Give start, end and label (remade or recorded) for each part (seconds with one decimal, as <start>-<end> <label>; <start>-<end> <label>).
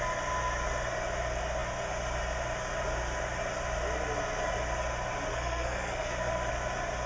0.0-5.3 recorded; 5.3-6.5 remade; 6.5-7.1 recorded